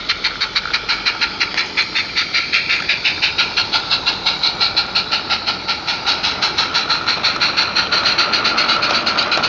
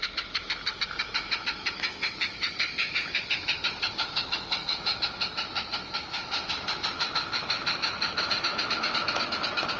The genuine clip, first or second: first